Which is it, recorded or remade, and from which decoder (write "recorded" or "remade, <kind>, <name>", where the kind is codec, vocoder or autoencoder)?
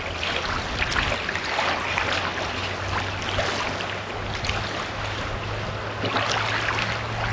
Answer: recorded